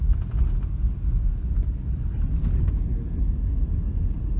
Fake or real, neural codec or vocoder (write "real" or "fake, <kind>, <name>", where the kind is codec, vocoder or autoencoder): real